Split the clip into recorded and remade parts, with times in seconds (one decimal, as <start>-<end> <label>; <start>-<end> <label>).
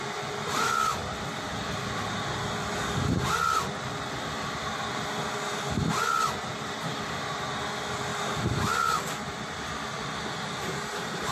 0.0-11.3 recorded